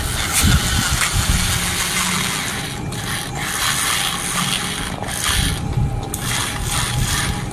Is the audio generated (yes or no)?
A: no